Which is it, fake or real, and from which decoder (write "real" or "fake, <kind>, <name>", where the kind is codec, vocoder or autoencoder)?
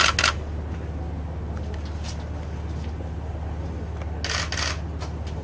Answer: real